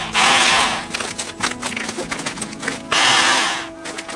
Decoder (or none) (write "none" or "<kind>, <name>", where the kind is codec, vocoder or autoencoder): none